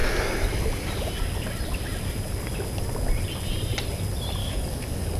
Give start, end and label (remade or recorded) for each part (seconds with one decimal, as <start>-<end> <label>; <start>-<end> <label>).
0.0-4.4 recorded; 4.4-5.2 remade